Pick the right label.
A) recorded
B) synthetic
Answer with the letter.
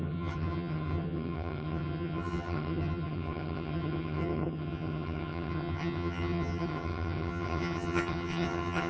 B